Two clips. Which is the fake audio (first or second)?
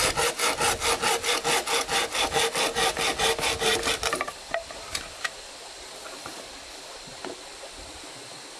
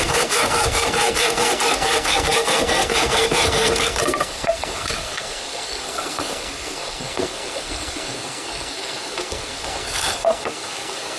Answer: second